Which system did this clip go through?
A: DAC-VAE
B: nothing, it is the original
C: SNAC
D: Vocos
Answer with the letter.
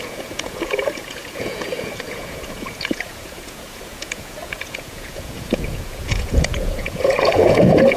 D